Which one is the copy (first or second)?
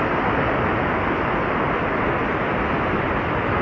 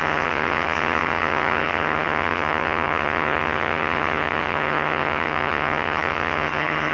second